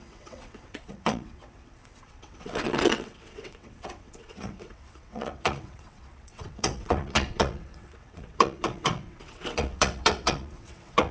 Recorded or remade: remade